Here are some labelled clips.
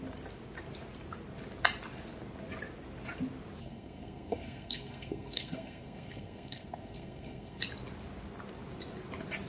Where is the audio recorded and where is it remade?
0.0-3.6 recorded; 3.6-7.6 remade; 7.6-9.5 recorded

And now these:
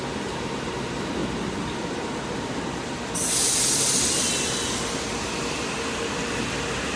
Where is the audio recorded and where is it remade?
0.0-1.2 remade; 1.2-5.4 recorded; 5.4-7.0 remade

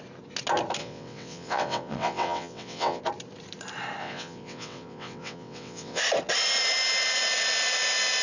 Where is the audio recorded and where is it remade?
0.0-0.8 recorded; 0.8-3.0 remade; 3.0-4.0 recorded; 4.0-6.0 remade; 6.0-8.2 recorded